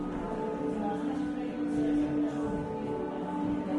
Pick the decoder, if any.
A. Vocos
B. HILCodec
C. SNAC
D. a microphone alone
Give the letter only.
D